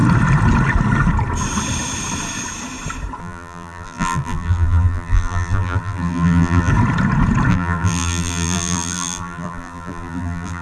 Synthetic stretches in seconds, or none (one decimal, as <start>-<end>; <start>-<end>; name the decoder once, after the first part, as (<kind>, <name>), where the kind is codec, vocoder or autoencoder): 3.2-6.7 (vocoder, BigVGAN v2); 7.5-10.6